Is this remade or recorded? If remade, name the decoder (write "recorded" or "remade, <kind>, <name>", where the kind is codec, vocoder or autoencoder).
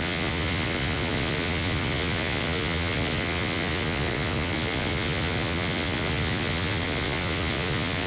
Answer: remade, vocoder, Vocos